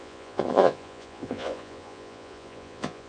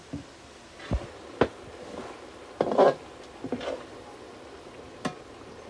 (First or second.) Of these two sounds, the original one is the second